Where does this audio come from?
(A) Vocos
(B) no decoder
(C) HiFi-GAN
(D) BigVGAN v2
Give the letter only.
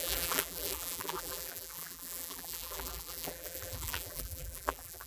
D